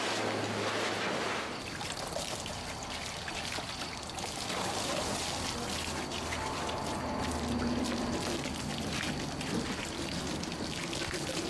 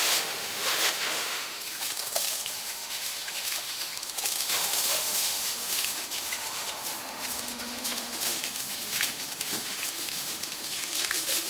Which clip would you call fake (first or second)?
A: second